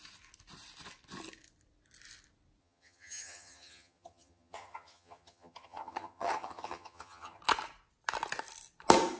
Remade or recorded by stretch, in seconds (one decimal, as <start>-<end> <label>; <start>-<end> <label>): 0.0-2.6 recorded; 2.6-7.4 remade; 7.4-9.2 recorded